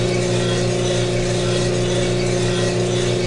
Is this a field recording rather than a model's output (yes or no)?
yes